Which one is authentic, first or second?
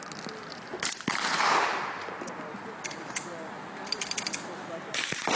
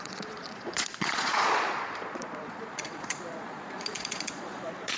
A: first